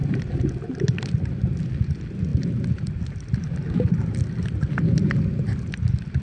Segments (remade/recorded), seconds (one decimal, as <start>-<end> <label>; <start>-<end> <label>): 0.0-6.2 recorded